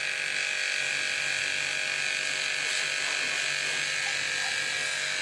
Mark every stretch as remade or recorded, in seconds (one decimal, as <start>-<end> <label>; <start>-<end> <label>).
0.0-5.2 recorded